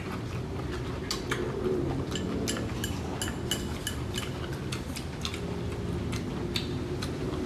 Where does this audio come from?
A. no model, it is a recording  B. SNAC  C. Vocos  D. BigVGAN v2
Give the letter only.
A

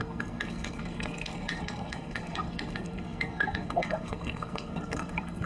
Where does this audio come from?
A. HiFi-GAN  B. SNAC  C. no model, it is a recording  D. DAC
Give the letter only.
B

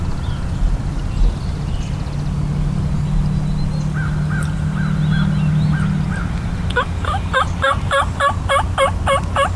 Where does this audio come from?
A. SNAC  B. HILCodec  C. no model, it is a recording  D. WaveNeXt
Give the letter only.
C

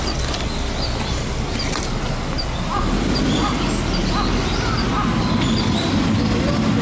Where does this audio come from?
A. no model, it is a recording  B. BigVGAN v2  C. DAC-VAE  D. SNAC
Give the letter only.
A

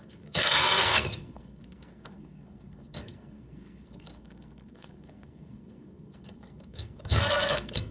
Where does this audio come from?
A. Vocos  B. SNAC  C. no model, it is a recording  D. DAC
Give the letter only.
B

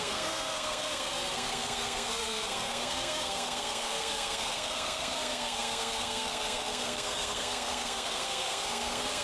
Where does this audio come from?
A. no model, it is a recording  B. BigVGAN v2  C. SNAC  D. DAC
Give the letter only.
C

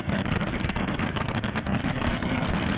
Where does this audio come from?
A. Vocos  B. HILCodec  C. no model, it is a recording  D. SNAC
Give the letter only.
D